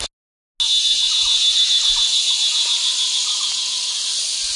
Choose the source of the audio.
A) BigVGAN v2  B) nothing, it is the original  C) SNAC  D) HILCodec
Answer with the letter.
B